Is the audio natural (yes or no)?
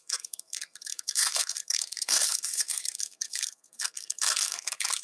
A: no